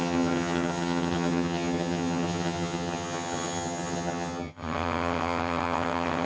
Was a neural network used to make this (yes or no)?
yes